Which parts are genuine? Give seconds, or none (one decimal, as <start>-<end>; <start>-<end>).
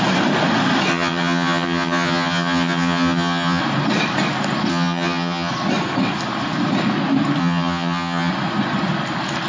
0.0-0.9; 3.6-4.7; 5.5-7.4; 8.3-9.5